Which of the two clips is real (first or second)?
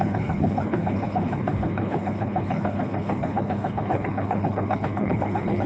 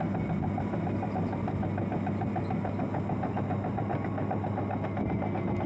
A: second